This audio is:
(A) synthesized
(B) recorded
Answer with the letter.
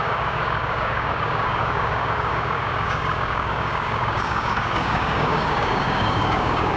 A